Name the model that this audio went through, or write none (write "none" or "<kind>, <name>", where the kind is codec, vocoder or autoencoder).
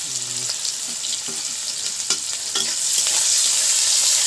none